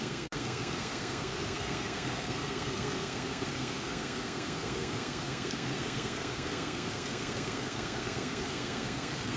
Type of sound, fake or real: fake